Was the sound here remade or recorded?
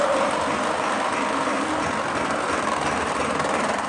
recorded